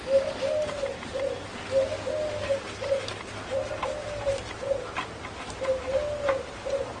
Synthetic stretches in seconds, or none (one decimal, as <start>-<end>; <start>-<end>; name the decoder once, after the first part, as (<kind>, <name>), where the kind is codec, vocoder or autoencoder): none